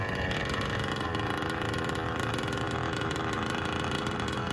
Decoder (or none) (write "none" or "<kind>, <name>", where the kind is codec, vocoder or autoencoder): vocoder, BigVGAN v2